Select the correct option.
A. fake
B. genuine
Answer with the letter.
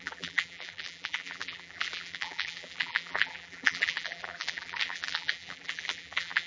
A